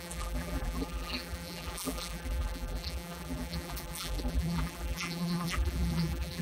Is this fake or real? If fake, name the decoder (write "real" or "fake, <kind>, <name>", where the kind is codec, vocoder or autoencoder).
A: fake, vocoder, BigVGAN v2